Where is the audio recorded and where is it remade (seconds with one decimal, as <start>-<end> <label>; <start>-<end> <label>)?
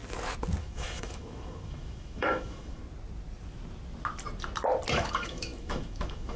0.0-0.6 recorded; 0.6-2.8 remade; 2.8-4.9 recorded; 4.9-6.4 remade